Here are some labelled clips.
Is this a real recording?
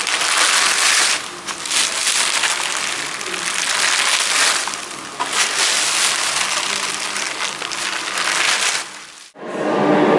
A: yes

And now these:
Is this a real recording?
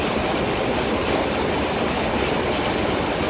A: yes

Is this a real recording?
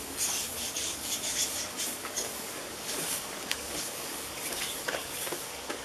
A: no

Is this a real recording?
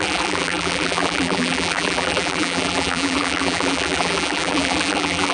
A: no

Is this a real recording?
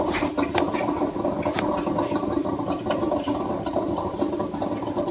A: yes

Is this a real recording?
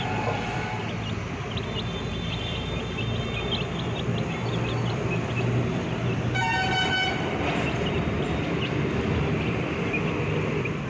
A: yes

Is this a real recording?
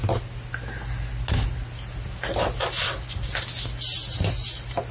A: yes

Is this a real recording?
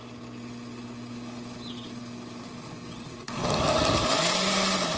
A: yes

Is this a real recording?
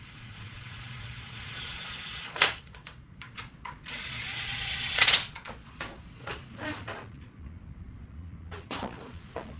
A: no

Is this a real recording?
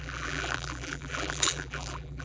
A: no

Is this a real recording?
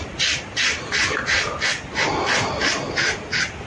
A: yes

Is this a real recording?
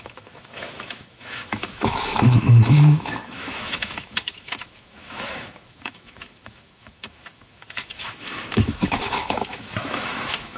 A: no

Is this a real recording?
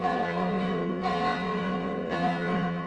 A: no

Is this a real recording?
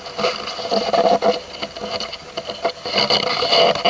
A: yes